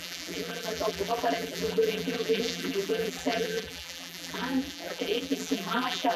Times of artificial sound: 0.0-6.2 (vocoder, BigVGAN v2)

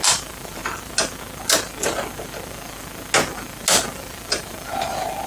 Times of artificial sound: 0.0-0.6 (vocoder, BigVGAN v2); 3.8-5.3

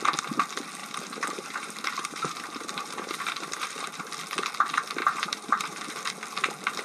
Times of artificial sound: 0.8-4.1 (vocoder, BigVGAN v2); 5.0-5.8

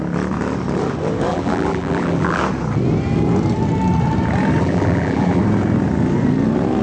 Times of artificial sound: 1.3-2.4 (vocoder, BigVGAN v2); 4.6-5.4

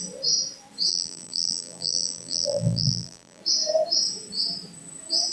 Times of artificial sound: 0.9-3.4 (vocoder, BigVGAN v2)

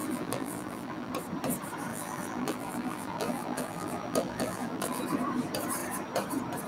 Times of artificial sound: 0.0-1.1 (vocoder, BigVGAN v2); 1.9-5.0

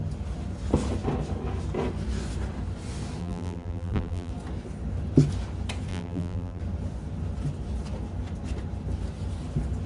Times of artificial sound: 3.2-4.3 (vocoder, BigVGAN v2); 5.9-6.6

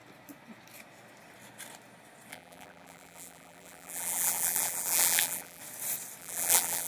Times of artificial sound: 2.3-5.6 (vocoder, BigVGAN v2); 6.2-6.9